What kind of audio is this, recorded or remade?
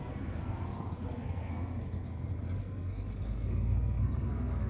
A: remade